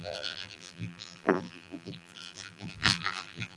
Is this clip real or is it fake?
fake